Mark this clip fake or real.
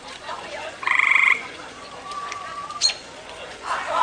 fake